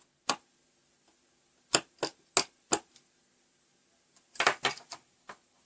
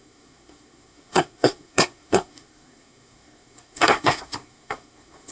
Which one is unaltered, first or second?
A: first